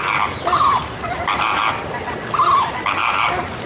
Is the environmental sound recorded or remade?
recorded